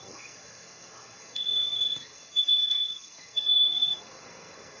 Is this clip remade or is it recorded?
remade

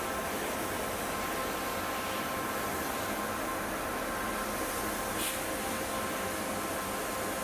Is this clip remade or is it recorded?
recorded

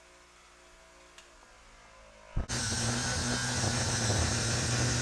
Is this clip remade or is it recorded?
recorded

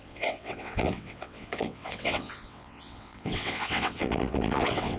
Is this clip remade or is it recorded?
remade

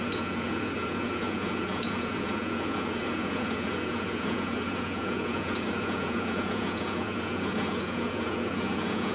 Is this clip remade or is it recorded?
remade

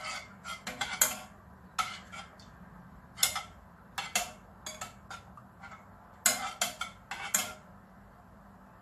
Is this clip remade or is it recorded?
recorded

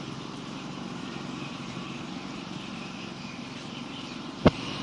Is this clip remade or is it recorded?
remade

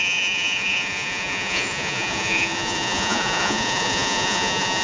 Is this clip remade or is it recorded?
remade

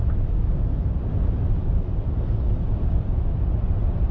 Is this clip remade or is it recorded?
recorded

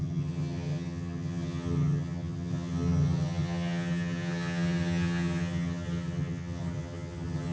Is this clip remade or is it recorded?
remade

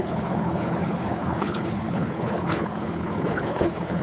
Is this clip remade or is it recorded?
remade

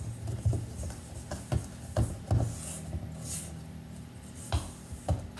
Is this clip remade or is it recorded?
recorded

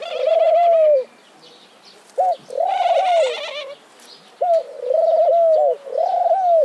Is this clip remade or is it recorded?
recorded